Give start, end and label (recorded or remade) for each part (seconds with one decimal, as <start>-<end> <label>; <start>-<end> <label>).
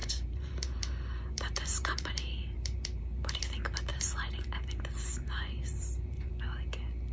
0.0-3.4 remade; 3.4-3.9 recorded; 3.9-6.3 remade; 6.3-7.1 recorded